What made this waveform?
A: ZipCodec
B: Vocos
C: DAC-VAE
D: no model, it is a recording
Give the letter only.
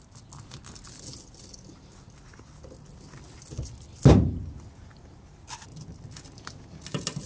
D